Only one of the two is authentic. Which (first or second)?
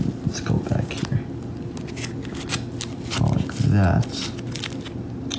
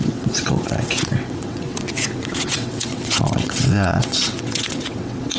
first